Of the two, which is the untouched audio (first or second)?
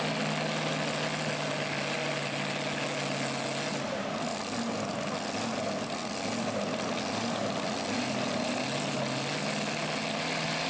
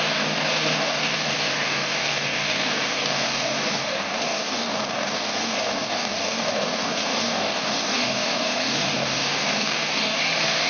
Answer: first